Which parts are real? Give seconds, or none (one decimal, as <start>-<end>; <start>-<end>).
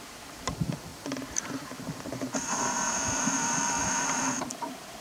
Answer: none